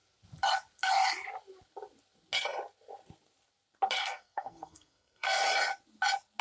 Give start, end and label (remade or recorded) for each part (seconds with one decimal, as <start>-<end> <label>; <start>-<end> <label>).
0.0-4.0 recorded; 4.0-5.4 remade; 5.4-6.4 recorded